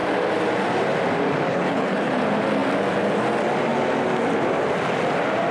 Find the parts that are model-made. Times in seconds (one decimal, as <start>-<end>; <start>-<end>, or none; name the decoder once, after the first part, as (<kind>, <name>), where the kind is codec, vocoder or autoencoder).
1.5-2.1 (codec, HILCodec)